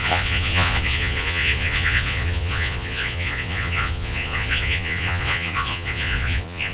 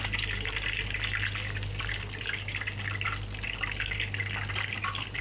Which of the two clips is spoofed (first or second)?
first